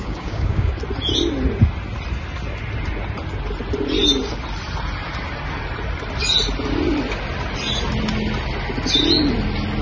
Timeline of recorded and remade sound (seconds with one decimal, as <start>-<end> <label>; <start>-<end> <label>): 0.0-0.8 remade; 0.8-9.8 recorded